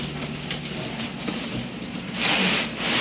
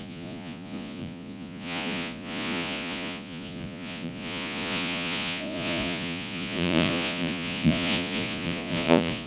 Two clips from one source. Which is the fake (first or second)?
second